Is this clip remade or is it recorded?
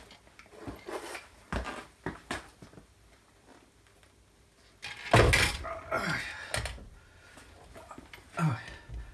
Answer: recorded